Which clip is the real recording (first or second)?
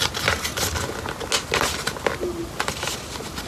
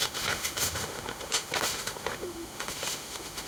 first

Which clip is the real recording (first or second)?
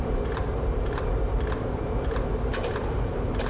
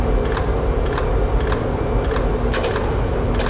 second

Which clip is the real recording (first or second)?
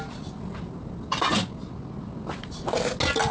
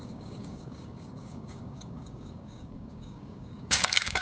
first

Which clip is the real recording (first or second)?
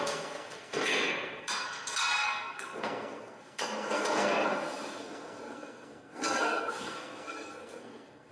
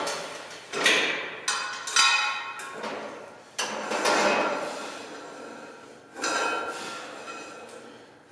second